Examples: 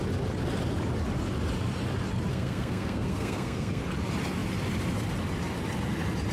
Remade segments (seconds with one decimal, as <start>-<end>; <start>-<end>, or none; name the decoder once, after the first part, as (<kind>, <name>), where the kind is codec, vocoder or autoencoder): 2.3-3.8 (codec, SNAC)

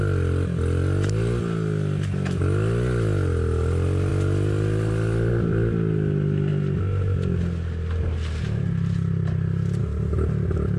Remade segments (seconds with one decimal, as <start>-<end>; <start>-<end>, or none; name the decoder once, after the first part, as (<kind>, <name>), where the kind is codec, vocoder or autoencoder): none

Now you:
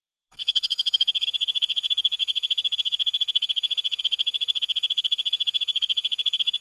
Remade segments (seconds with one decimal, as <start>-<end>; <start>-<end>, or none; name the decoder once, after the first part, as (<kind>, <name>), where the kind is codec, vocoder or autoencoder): 0.0-6.6 (codec, SNAC)